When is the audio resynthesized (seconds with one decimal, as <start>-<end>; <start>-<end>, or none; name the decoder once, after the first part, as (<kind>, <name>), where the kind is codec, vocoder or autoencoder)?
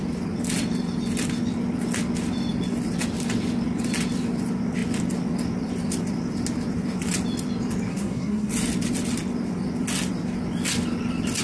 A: 7.9-8.5 (codec, SNAC)